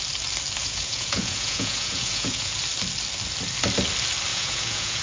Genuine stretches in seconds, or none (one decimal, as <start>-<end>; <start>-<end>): 0.0-0.6; 2.5-4.3